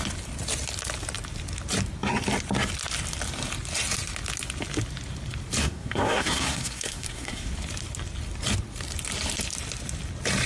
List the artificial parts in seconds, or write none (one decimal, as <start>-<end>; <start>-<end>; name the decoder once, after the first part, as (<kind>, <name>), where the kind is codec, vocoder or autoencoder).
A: 5.6-7.5 (codec, SNAC)